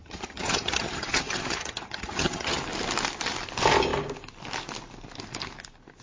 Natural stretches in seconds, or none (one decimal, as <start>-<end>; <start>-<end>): 2.6-6.0